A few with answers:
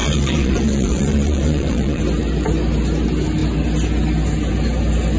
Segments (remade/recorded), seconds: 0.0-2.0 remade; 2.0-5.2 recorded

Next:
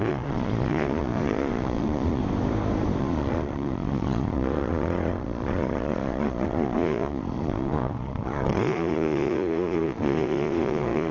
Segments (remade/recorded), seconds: 0.0-2.2 remade; 2.2-3.0 recorded; 3.0-11.1 remade

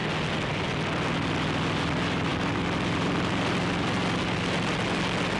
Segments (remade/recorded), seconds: 0.0-5.4 recorded

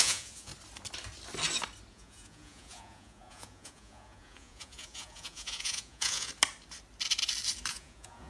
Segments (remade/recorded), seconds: 0.0-0.5 remade; 0.5-1.9 recorded; 1.9-6.3 remade; 6.3-7.7 recorded; 7.7-8.3 remade